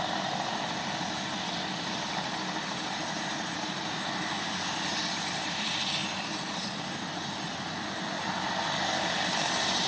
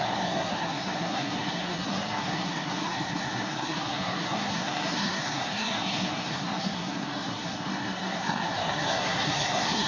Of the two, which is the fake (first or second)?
second